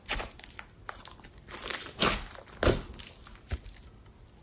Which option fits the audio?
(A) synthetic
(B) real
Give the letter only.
B